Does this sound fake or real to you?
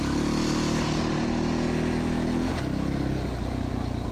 real